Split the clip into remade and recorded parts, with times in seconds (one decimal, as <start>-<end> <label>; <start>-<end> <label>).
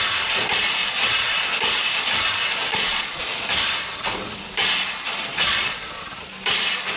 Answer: 0.0-0.8 recorded; 0.8-1.4 remade; 1.4-2.7 recorded; 2.7-3.2 remade; 3.2-5.3 recorded; 5.3-6.0 remade; 6.0-7.0 recorded